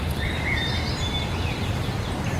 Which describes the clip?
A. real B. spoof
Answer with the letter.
A